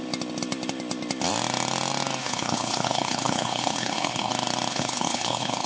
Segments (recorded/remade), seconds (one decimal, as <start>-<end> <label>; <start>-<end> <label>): 0.0-2.2 recorded; 2.2-4.3 remade; 4.3-4.7 recorded; 4.7-5.7 remade